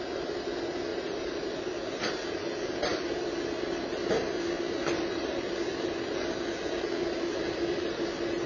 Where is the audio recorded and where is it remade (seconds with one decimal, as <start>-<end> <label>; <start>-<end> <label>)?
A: 0.0-8.5 recorded